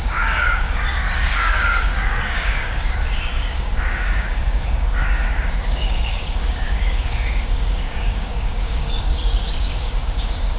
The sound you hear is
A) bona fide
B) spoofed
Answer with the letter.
B